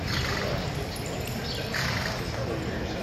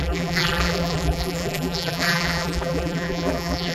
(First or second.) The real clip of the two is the first